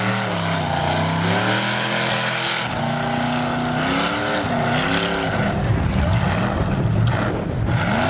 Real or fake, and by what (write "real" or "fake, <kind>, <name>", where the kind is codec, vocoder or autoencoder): real